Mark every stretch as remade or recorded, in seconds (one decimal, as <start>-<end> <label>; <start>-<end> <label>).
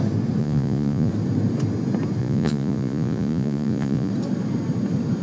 0.0-0.4 recorded; 0.4-1.1 remade; 1.1-2.2 recorded; 2.2-4.1 remade; 4.1-5.2 recorded